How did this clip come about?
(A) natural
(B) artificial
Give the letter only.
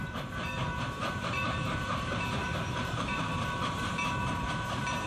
B